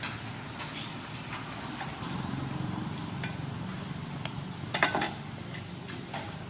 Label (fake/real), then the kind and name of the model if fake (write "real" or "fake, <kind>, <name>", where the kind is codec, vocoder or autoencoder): real